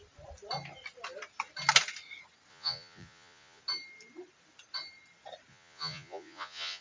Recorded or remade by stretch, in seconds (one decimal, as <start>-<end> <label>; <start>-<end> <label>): 0.0-2.5 recorded; 2.5-3.6 remade; 3.6-5.5 recorded; 5.5-6.8 remade